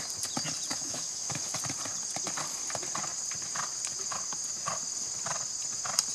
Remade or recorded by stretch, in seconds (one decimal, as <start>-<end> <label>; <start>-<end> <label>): 0.0-0.7 recorded; 0.7-1.4 remade; 1.4-6.1 recorded